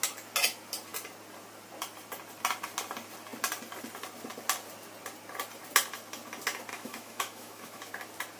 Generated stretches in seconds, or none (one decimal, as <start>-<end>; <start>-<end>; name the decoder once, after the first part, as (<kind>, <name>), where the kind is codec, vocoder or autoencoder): 6.7-7.9 (autoencoder, DAC-VAE)